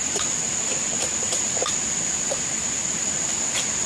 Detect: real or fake real